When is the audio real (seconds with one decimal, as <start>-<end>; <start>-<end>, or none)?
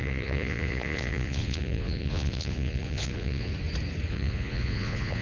3.5-4.1